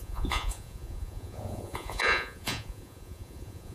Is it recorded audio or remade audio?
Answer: remade